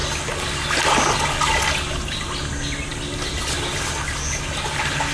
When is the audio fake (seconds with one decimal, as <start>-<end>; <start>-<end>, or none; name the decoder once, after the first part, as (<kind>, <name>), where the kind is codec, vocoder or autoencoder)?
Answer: none